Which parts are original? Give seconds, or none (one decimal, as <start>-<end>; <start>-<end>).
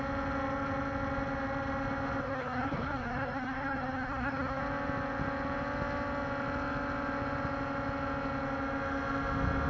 0.0-2.2; 4.6-9.7